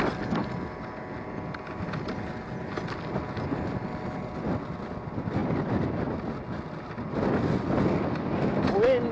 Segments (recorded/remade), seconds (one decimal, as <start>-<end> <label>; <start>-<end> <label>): 0.0-9.1 recorded